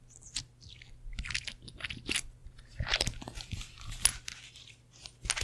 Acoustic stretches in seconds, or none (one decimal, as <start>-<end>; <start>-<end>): 0.0-2.4; 3.9-5.4